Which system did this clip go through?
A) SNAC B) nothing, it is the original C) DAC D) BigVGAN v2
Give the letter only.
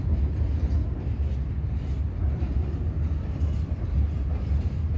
B